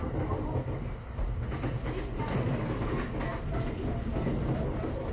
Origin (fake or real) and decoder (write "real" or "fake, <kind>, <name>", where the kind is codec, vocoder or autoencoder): real